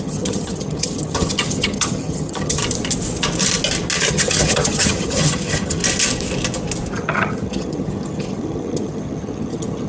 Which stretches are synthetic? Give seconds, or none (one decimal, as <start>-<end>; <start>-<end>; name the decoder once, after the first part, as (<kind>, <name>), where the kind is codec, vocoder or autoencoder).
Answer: 0.0-2.6 (vocoder, HiFi-GAN); 4.1-5.8; 6.9-9.9